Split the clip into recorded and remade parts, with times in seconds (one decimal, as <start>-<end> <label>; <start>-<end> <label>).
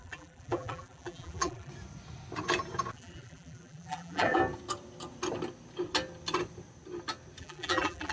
0.0-1.7 remade; 1.7-2.9 recorded; 2.9-4.4 remade; 4.4-7.4 recorded; 7.4-8.1 remade